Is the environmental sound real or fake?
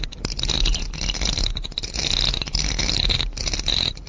real